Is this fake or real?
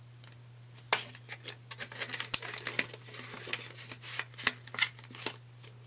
real